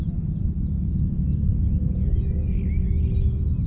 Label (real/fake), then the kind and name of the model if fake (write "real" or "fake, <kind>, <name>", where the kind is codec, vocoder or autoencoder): real